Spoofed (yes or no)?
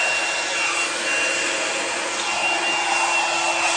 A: no